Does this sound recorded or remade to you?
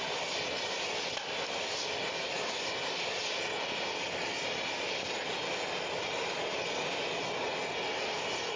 recorded